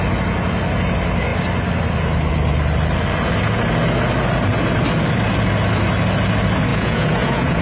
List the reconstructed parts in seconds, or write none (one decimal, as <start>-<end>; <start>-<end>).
6.7-7.6